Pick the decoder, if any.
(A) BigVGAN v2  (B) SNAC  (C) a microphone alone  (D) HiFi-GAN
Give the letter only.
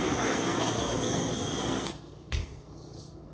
B